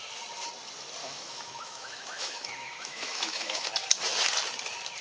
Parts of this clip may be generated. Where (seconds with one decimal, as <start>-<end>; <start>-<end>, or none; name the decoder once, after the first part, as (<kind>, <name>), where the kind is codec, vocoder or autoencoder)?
1.0-3.7 (autoencoder, DAC-VAE)